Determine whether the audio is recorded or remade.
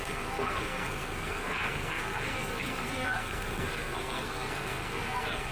remade